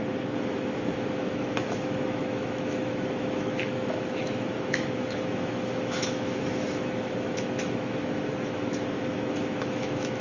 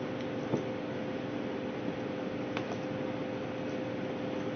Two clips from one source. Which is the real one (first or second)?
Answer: second